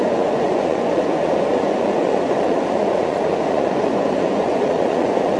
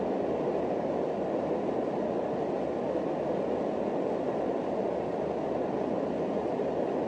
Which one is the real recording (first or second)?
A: second